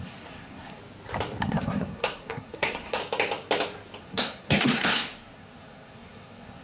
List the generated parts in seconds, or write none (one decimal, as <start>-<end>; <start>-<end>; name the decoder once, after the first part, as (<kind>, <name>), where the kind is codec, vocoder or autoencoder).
0.0-0.8 (codec, SNAC); 1.4-3.0; 4.0-6.6